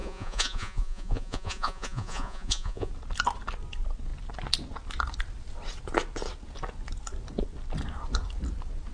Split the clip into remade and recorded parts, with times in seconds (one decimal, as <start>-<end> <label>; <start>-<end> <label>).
0.0-2.9 remade; 2.9-8.9 recorded

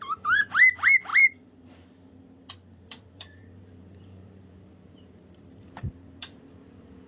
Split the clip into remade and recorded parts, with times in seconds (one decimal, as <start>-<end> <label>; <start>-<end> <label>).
0.0-7.1 remade

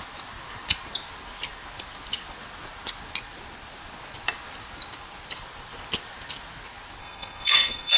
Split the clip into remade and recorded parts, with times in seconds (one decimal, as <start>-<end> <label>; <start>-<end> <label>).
0.0-7.0 recorded; 7.0-8.0 remade

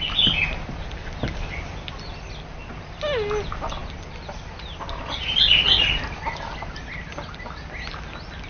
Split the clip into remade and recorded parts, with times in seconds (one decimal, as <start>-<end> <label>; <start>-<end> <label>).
0.0-8.5 recorded

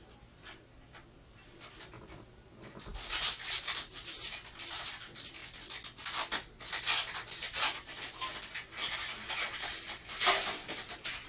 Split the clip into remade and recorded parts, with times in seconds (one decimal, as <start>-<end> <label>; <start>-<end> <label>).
0.0-5.4 remade; 5.4-7.4 recorded; 7.4-8.3 remade; 8.3-9.0 recorded; 9.0-11.3 remade